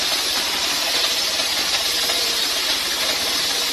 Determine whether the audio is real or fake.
real